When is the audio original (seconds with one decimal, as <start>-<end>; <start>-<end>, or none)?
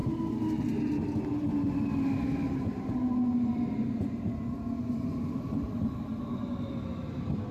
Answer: 0.0-7.5